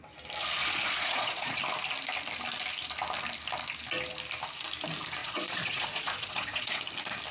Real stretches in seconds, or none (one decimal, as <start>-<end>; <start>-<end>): 0.0-0.6; 1.6-5.2; 6.8-7.3